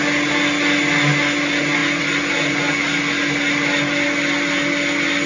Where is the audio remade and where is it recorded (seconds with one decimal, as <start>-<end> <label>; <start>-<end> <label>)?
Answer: 0.0-5.3 recorded